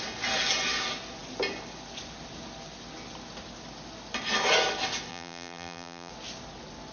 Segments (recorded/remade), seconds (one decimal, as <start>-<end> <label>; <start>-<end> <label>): 0.0-5.1 recorded; 5.1-6.1 remade; 6.1-6.9 recorded